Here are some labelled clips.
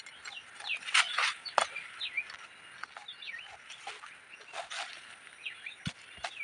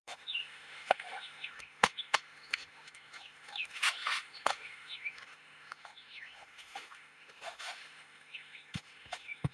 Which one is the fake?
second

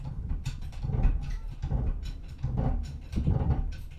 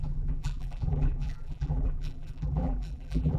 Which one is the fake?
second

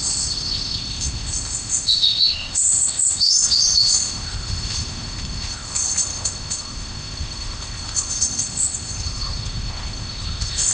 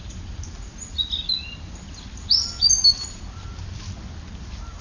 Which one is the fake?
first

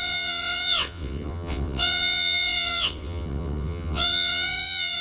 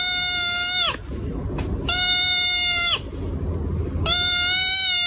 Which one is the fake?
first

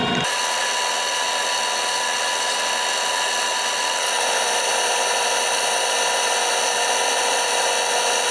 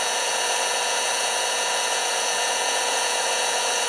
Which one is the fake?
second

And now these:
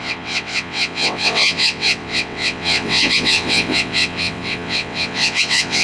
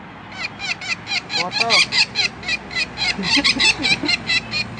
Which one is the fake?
first